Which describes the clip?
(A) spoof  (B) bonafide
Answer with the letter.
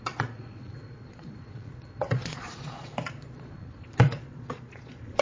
A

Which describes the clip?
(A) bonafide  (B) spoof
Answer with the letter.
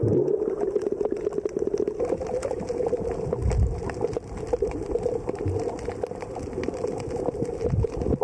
A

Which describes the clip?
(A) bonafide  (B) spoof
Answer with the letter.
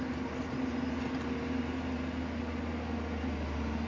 A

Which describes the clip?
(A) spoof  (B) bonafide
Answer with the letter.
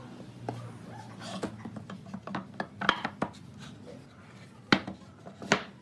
B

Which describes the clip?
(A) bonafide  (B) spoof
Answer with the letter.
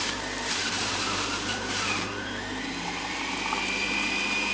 B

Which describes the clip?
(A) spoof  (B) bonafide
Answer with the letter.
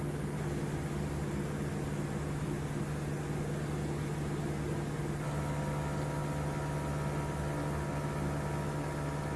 B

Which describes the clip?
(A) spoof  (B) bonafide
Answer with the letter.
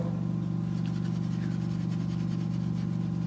B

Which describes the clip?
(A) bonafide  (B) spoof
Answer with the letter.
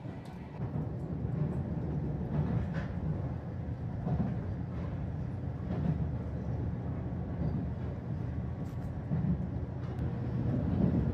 A